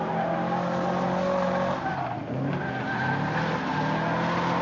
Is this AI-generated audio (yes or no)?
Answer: no